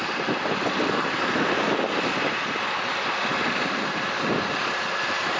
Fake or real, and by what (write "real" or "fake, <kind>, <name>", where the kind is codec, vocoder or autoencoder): real